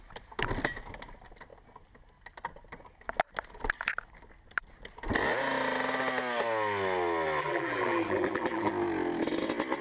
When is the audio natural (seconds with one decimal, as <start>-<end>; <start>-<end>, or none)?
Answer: 0.0-7.4; 8.7-9.8